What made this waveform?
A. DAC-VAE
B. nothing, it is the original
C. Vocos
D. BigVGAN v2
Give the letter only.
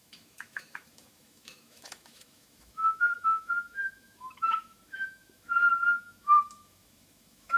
A